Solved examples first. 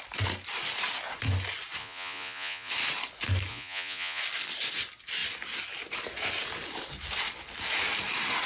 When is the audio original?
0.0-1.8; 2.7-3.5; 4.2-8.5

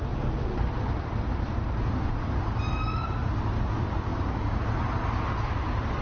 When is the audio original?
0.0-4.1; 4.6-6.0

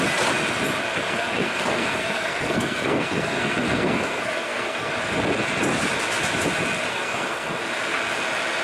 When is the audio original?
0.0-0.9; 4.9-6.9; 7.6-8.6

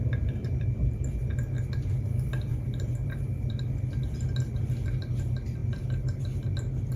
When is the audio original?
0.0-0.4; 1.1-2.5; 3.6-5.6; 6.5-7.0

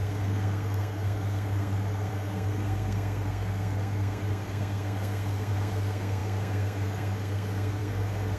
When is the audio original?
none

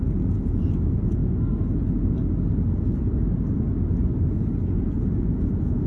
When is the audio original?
1.2-4.7

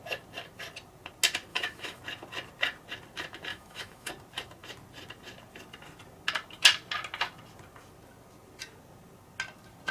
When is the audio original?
0.0-1.5; 2.0-3.5; 4.1-9.9